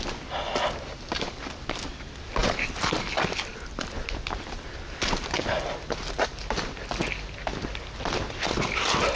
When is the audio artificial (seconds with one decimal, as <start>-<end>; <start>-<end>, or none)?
none